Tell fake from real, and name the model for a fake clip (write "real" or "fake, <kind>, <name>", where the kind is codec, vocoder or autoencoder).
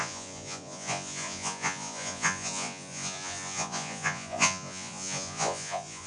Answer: fake, vocoder, Vocos